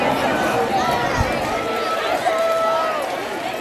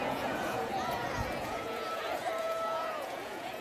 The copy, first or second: second